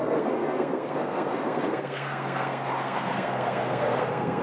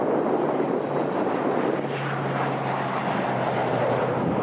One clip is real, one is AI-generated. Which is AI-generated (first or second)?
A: first